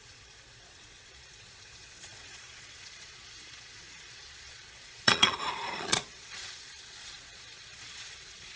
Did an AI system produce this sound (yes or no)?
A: yes